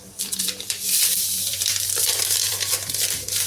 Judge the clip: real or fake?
fake